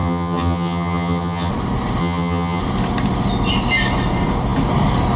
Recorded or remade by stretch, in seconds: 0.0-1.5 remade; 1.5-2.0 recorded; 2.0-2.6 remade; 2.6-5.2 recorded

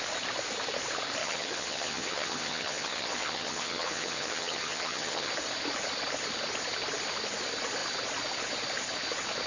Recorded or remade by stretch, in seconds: 0.0-1.2 recorded; 1.2-5.3 remade; 5.3-9.5 recorded

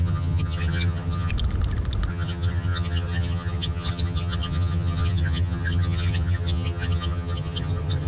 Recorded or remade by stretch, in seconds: 0.0-1.3 remade; 1.3-2.1 recorded; 2.1-8.1 remade

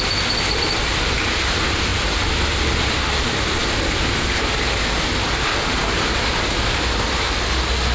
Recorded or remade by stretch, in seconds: 0.0-7.9 recorded

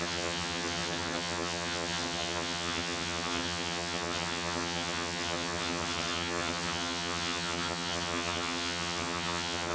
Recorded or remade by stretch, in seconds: 0.0-9.7 remade

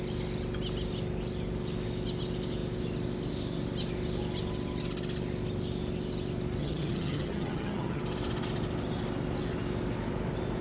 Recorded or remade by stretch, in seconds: 0.0-6.6 recorded; 6.6-8.0 remade; 8.0-10.6 recorded